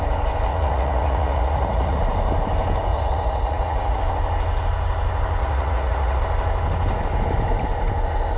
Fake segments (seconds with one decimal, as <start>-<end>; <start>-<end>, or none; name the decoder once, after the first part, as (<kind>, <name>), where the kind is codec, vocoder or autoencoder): 0.5-2.0 (vocoder, Vocos); 2.9-4.0; 5.4-6.2